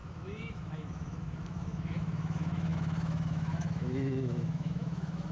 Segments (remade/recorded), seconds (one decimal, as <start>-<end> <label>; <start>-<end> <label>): 0.0-5.3 remade